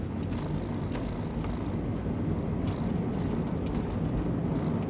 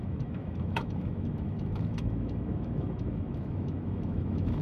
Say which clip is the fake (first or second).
second